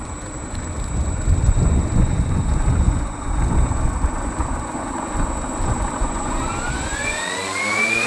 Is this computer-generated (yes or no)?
yes